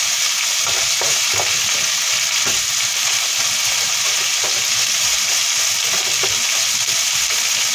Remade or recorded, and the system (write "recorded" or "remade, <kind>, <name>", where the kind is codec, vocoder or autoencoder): recorded